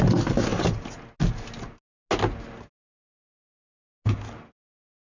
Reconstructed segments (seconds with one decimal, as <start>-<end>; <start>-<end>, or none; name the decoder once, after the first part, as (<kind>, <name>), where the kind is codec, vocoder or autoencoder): none